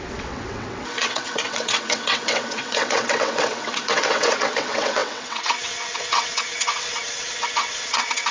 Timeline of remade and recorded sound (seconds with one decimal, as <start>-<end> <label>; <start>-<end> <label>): 0.0-8.3 remade